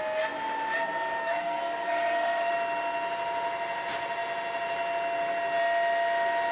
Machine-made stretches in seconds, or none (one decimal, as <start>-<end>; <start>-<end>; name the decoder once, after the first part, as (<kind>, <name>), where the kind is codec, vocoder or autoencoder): 1.2-2.5 (codec, SNAC)